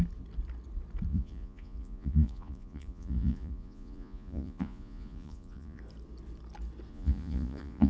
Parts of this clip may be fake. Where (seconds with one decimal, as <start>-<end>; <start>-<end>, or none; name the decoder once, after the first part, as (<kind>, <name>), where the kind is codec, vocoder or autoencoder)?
1.1-5.8 (vocoder, Vocos); 6.9-7.9